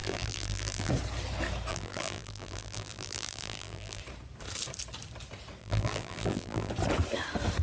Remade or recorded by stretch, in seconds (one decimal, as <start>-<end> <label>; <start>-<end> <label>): 0.0-0.9 remade; 0.9-1.7 recorded; 1.7-4.0 remade; 4.0-5.6 recorded; 5.6-6.7 remade; 6.7-7.6 recorded